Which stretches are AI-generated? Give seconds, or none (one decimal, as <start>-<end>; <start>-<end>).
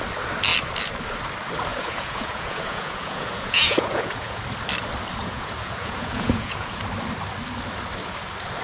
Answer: 1.7-4.4; 5.2-6.8